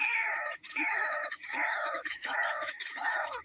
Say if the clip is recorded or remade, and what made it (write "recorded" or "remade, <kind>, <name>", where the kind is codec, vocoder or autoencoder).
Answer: remade, autoencoder, DAC-VAE